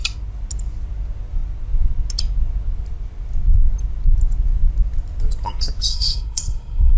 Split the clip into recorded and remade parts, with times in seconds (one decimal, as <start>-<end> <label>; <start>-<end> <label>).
0.0-5.9 recorded; 5.9-7.0 remade